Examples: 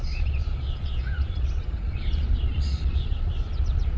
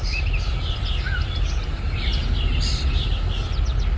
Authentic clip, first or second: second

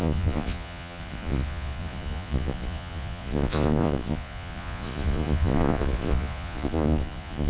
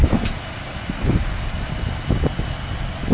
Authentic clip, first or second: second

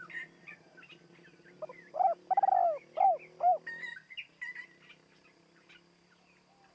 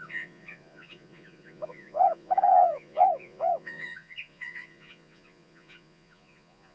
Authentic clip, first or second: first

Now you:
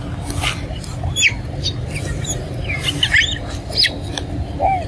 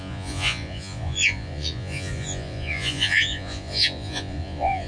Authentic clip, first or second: first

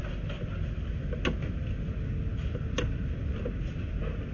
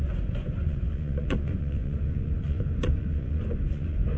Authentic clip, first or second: first